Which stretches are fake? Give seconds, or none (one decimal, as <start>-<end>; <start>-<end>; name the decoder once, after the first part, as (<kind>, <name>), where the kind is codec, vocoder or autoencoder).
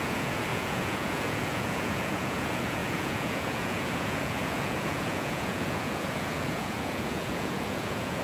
0.0-8.2 (vocoder, Vocos)